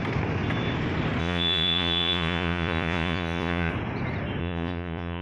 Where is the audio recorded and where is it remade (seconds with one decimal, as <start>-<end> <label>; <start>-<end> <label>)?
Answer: 0.0-1.2 recorded; 1.2-3.7 remade; 3.7-4.4 recorded; 4.4-5.2 remade